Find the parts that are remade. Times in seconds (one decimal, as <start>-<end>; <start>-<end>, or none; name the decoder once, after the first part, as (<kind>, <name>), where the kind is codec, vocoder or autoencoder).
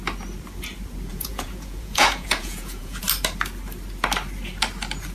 1.1-3.0 (vocoder, Vocos)